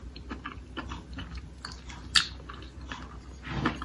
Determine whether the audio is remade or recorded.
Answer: recorded